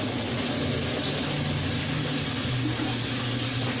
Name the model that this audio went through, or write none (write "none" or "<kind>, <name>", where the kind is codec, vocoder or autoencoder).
none